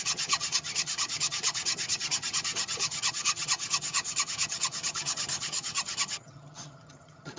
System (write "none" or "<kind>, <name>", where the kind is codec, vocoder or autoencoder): vocoder, HiFi-GAN